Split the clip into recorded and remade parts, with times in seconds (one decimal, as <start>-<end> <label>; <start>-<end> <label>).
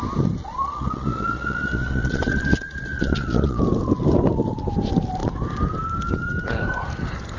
0.0-0.4 recorded; 0.4-3.6 remade; 3.6-7.4 recorded